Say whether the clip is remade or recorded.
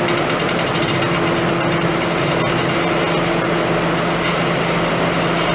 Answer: recorded